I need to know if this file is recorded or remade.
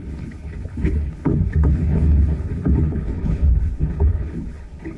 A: remade